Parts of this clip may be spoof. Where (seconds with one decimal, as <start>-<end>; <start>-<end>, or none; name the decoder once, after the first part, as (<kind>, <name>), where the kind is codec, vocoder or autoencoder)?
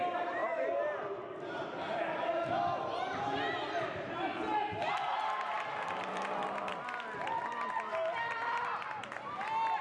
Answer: none